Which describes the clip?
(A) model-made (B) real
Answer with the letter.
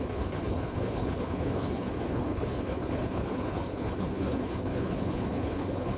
A